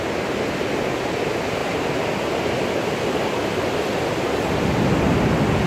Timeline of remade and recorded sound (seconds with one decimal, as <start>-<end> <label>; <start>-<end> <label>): 0.0-5.7 recorded